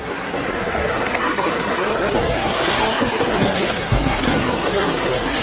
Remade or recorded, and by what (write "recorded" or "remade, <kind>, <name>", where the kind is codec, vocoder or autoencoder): remade, codec, SNAC